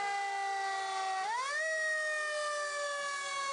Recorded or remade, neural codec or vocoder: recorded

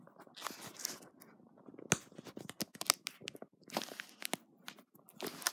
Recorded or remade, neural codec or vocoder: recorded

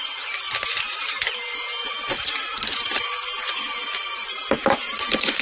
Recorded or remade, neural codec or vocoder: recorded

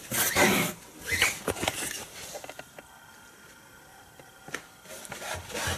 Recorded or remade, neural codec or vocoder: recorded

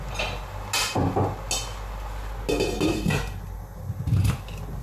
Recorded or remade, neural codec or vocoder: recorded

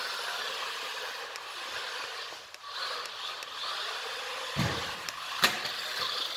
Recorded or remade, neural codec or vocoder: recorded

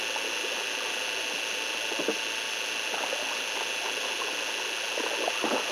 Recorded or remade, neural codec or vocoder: remade, vocoder, BigVGAN v2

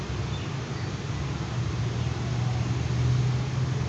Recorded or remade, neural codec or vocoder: recorded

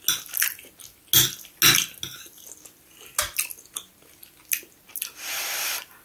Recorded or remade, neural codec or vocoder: recorded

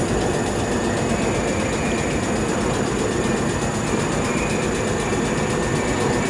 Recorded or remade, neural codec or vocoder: recorded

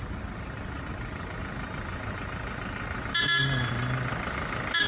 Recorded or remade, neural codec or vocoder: recorded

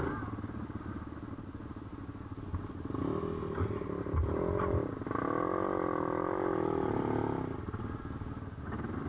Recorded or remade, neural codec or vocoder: recorded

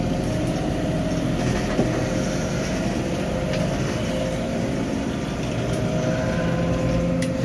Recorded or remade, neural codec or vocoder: recorded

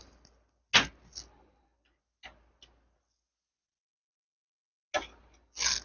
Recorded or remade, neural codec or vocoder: recorded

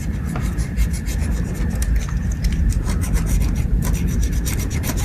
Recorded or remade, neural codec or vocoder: remade, vocoder, BigVGAN v2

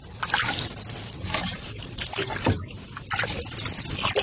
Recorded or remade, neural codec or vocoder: recorded